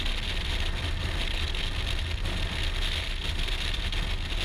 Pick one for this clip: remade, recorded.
recorded